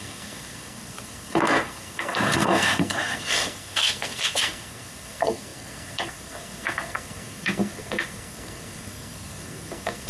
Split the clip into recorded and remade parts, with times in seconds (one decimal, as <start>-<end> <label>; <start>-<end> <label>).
0.0-10.1 remade